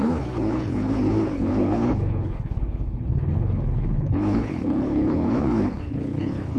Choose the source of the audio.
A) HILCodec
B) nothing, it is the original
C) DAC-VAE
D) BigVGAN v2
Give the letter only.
A